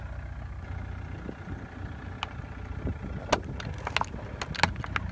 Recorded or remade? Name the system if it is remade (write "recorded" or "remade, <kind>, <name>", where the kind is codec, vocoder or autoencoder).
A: recorded